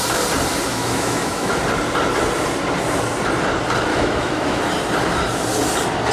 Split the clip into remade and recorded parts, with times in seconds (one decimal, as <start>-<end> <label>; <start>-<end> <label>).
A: 0.0-0.7 recorded; 0.7-1.6 remade; 1.6-3.9 recorded; 3.9-4.6 remade; 4.6-6.1 recorded

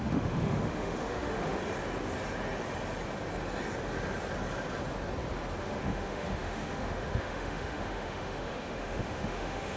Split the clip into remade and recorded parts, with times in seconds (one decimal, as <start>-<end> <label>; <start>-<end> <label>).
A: 0.0-1.6 remade; 1.6-5.6 recorded; 5.6-9.8 remade

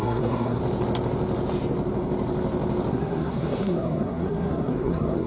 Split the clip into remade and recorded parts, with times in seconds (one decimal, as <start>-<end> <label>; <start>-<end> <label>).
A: 0.0-0.6 remade; 0.6-2.9 recorded; 2.9-5.3 remade

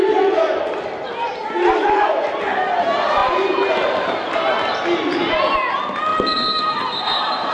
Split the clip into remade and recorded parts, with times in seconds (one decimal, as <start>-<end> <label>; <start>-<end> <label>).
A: 0.0-3.2 recorded; 3.2-3.7 remade; 3.7-6.1 recorded; 6.1-7.5 remade

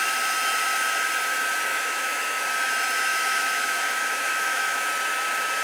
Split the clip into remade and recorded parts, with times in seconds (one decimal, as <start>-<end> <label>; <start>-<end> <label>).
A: 0.0-1.7 recorded; 1.7-2.4 remade; 2.4-3.1 recorded; 3.1-4.9 remade; 4.9-5.6 recorded